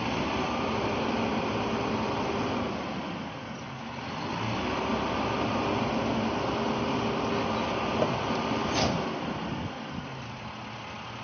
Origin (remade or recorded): recorded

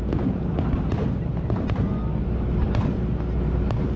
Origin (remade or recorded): recorded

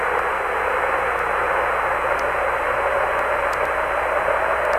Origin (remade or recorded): recorded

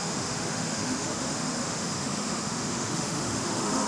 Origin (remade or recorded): remade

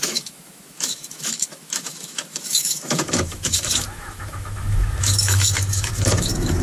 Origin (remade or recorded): remade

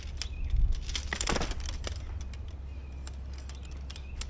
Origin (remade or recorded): recorded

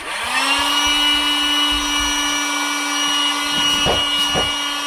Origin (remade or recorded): recorded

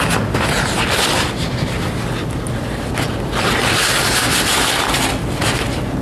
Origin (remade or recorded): recorded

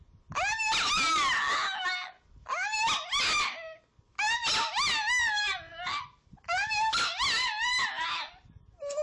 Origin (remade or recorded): recorded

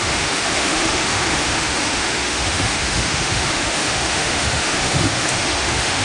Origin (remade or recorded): remade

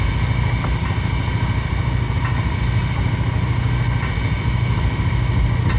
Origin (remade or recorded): recorded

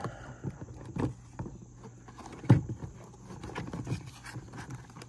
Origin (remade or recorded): recorded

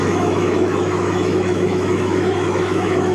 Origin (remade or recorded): remade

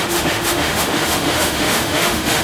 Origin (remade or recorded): remade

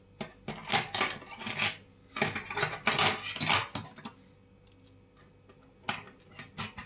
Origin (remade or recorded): recorded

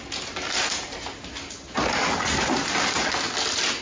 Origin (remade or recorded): recorded